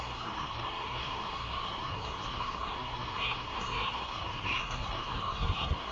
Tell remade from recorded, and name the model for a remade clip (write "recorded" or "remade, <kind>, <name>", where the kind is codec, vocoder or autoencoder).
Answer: remade, codec, SNAC